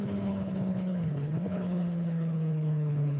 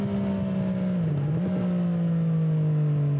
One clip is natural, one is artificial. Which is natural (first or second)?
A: second